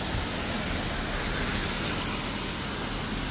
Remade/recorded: recorded